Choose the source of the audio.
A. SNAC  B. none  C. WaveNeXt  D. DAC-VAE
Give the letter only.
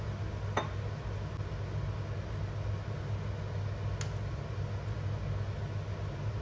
B